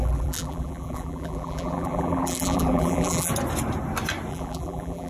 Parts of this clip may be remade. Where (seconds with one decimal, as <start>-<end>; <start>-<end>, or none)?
0.0-3.3; 4.3-5.1